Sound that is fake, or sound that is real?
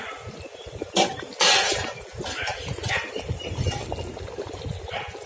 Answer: real